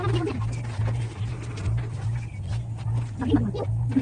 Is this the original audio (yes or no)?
yes